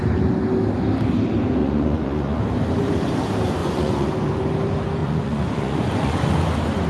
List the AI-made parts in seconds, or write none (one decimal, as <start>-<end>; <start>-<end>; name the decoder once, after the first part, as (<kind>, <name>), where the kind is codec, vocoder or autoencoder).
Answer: 1.6-2.4 (vocoder, Vocos); 3.6-4.1; 5.0-6.3